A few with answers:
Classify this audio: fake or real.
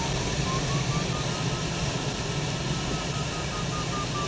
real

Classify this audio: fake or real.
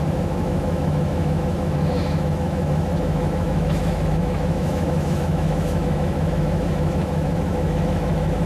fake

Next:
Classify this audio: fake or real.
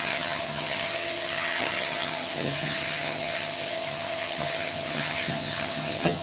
fake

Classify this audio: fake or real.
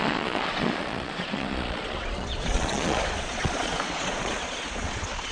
fake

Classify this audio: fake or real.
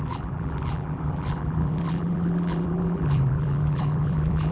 fake